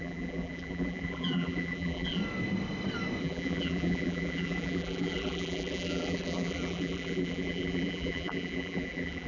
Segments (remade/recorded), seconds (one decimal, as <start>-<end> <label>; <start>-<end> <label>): 0.0-2.2 remade; 2.2-3.2 recorded; 3.2-9.3 remade